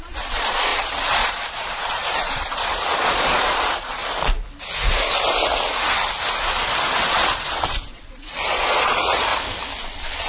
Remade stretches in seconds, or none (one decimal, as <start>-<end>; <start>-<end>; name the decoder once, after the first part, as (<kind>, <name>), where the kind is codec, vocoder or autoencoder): 0.0-4.0 (vocoder, Vocos); 7.1-9.3